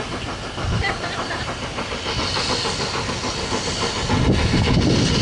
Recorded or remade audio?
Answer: recorded